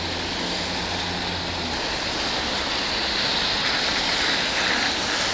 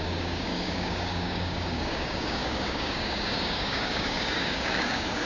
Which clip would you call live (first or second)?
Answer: first